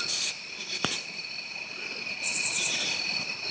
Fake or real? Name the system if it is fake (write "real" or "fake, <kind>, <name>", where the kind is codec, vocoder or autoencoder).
real